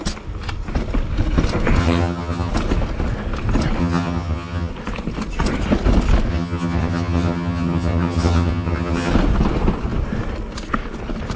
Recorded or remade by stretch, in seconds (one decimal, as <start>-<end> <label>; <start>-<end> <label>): 0.0-1.8 recorded; 1.8-2.5 remade; 2.5-3.8 recorded; 3.8-4.7 remade; 4.7-6.3 recorded; 6.3-9.1 remade; 9.1-11.4 recorded